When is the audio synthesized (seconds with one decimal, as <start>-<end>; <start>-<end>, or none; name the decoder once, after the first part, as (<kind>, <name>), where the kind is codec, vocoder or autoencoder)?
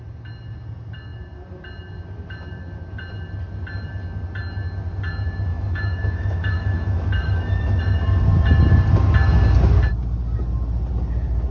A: 5.5-7.8 (autoencoder, DAC-VAE)